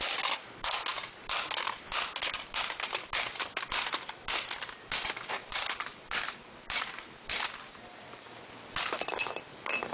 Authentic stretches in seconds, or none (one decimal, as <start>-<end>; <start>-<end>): 0.0-9.9